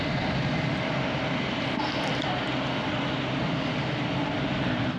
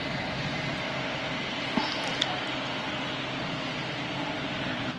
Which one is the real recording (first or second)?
second